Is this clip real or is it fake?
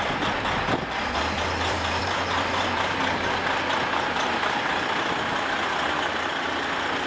fake